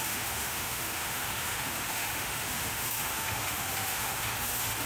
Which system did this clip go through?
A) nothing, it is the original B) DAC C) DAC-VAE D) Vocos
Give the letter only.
C